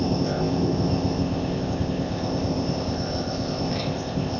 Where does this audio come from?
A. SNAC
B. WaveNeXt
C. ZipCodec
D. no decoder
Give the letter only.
C